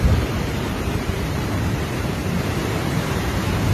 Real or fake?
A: fake